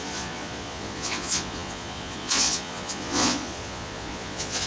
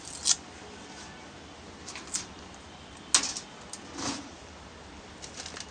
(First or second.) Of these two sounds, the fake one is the first